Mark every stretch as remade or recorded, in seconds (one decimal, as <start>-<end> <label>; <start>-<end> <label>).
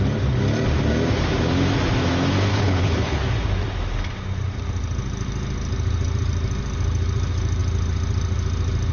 0.0-2.5 recorded; 2.5-3.2 remade; 3.2-8.9 recorded